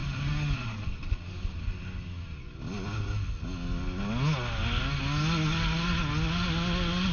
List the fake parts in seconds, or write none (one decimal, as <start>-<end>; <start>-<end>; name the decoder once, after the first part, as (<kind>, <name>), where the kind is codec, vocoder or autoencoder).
none